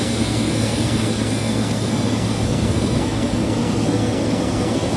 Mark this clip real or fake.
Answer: fake